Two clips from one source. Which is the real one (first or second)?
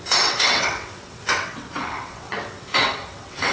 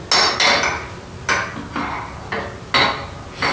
second